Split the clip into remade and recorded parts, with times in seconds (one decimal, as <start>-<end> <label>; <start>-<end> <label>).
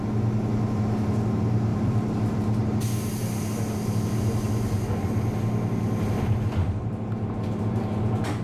0.0-1.7 recorded; 1.7-2.6 remade; 2.6-8.4 recorded